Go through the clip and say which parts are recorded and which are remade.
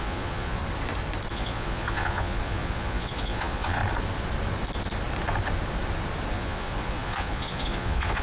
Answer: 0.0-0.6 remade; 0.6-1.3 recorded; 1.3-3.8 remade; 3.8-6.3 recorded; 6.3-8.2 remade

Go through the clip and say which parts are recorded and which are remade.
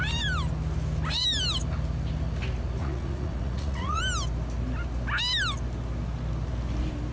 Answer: 0.0-2.8 recorded; 2.8-4.0 remade; 4.0-7.1 recorded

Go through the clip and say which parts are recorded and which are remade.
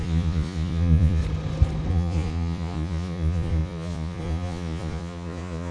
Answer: 0.0-1.2 remade; 1.2-1.9 recorded; 1.9-5.7 remade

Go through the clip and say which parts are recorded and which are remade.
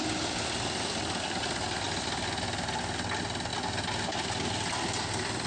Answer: 0.0-5.5 recorded